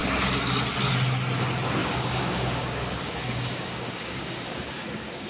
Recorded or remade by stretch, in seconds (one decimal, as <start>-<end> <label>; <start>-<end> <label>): 0.0-1.8 recorded; 1.8-5.3 remade